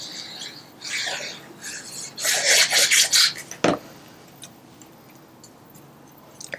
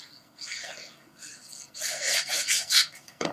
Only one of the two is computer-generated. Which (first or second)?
second